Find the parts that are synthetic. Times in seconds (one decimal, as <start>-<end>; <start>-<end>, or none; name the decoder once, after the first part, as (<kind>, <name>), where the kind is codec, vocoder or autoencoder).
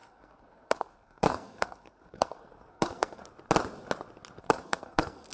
0.0-3.2 (codec, SNAC); 4.4-5.3